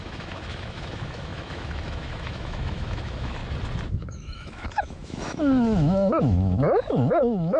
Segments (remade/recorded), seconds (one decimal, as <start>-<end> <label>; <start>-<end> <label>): 0.0-3.4 remade; 3.4-3.9 recorded; 3.9-7.6 remade